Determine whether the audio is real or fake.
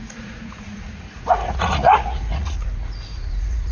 fake